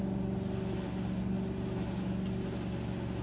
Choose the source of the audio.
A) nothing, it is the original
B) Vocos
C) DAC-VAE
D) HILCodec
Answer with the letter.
A